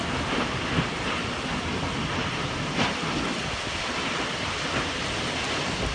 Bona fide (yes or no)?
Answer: yes